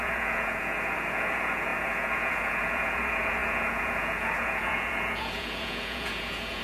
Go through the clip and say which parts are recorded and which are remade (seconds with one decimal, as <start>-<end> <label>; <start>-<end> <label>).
0.0-6.6 remade